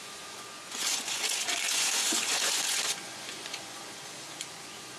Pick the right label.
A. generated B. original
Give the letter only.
A